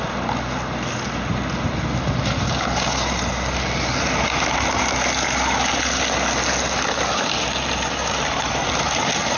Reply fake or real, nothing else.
real